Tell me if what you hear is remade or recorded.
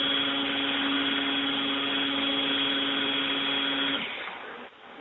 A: recorded